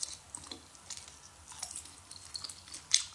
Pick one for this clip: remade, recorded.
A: recorded